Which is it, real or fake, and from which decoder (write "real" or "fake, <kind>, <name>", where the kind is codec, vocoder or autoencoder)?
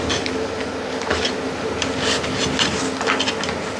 real